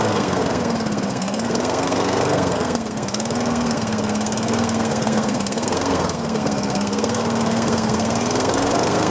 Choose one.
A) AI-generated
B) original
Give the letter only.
A